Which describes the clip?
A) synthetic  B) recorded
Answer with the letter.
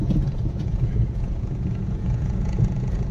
A